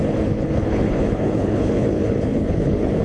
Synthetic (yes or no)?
yes